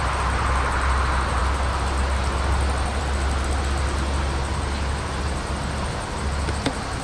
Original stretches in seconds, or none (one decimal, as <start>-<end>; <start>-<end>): 0.0-7.0

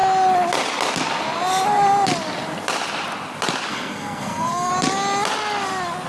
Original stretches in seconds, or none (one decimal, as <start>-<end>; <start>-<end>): 0.0-3.7; 4.7-6.1

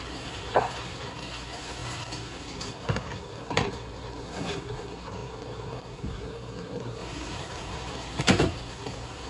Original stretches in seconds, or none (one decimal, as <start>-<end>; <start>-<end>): none

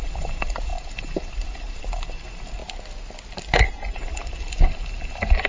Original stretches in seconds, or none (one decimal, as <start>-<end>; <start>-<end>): 2.6-3.9

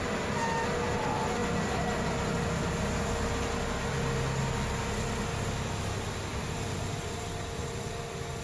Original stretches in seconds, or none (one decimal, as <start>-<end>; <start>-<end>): 0.0-6.3; 7.9-8.4

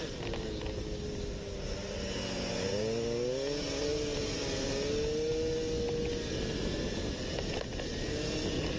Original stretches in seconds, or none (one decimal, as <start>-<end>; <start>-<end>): 0.0-3.8; 4.7-8.8

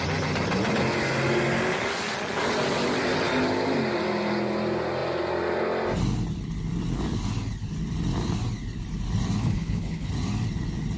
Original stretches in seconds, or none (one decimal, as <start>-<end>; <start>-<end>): 0.0-9.4; 10.1-11.0